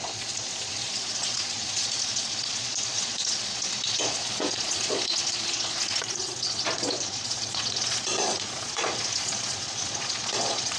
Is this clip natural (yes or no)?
no